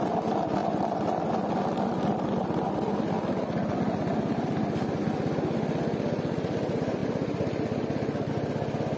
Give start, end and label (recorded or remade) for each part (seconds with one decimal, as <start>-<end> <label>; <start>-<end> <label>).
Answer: 0.0-9.0 recorded